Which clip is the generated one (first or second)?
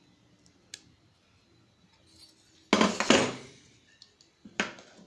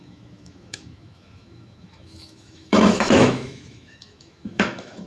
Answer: second